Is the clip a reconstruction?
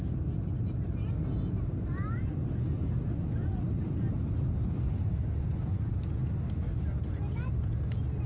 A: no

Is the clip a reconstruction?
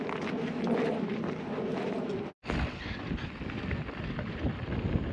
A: no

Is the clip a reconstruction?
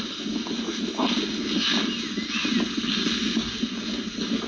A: no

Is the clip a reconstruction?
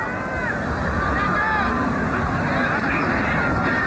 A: no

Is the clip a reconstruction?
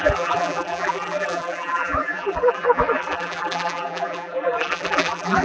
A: yes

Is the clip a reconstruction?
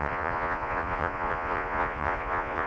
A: yes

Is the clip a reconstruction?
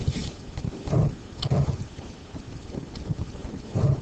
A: no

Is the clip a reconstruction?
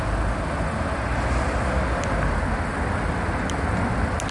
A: no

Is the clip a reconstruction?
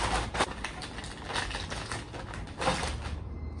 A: no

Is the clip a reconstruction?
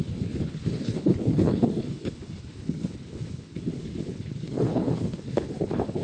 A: yes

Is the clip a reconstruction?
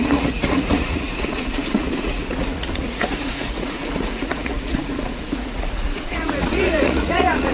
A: yes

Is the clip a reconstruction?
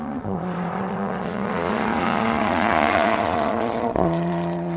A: yes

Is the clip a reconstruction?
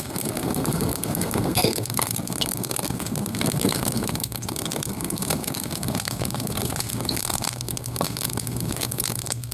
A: yes